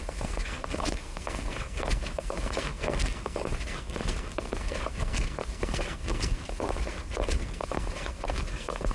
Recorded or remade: remade